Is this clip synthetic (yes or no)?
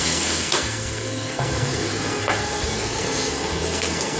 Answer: yes